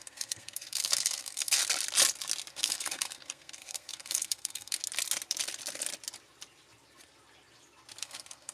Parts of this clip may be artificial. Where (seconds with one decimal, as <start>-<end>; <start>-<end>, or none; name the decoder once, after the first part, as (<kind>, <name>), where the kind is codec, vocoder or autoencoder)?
0.0-1.6 (codec, SNAC); 2.5-4.8; 8.0-8.5